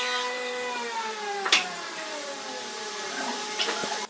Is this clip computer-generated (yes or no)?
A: yes